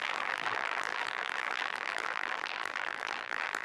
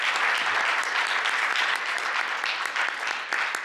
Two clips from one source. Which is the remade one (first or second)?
first